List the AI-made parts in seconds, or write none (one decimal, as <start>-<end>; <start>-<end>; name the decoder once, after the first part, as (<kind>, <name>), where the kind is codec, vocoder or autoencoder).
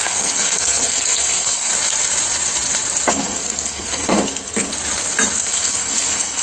0.0-1.7 (codec, SNAC); 3.1-4.7; 5.4-6.4